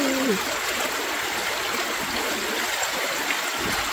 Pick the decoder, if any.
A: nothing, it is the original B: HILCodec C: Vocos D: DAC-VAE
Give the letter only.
A